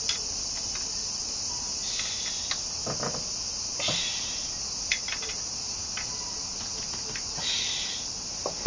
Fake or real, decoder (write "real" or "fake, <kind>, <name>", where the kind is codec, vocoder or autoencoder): real